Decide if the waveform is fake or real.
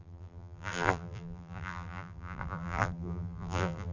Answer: fake